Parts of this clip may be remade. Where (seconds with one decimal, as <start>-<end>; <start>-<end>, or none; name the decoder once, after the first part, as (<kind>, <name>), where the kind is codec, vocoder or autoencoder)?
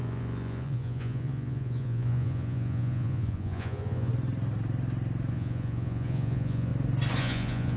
0.0-4.1 (vocoder, Vocos); 5.3-6.7; 7.2-7.8